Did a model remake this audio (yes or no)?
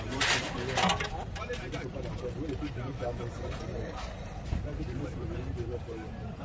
yes